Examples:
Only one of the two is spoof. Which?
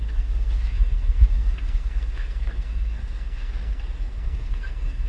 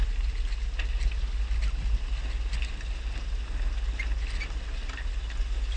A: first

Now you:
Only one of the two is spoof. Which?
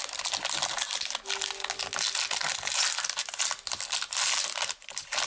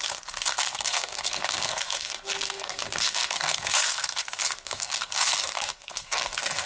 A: second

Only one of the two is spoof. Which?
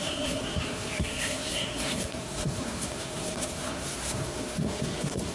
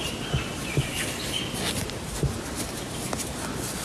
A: first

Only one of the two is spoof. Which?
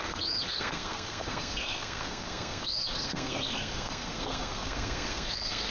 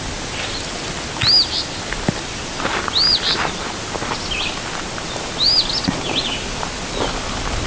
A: first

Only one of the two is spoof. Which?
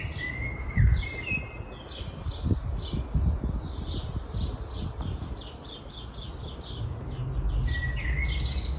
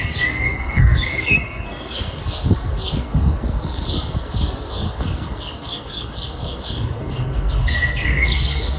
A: second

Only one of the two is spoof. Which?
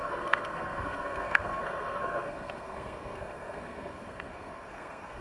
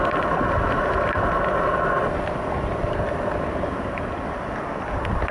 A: first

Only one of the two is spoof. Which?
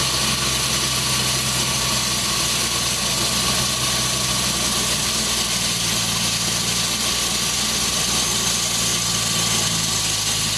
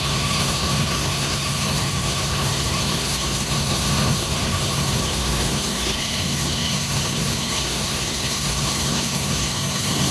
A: second